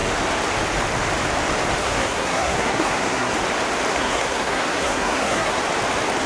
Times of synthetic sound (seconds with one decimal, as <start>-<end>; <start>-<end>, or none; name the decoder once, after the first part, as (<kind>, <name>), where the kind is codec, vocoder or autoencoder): 1.8-3.3 (codec, SNAC); 3.9-5.6